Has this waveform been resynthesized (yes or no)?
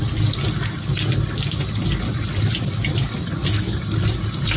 no